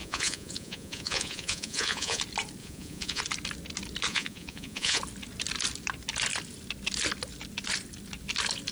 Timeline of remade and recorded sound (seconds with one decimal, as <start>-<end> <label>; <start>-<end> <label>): 0.0-2.2 remade; 2.2-2.6 recorded; 2.6-3.2 remade; 3.2-4.1 recorded; 4.1-5.0 remade; 5.0-8.7 recorded